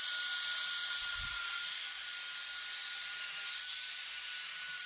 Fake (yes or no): no